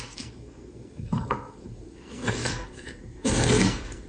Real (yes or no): no